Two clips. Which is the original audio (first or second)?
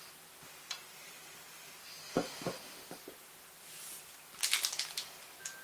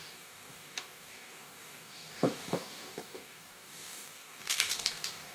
first